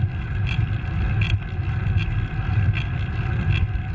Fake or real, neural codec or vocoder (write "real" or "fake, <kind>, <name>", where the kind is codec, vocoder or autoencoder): real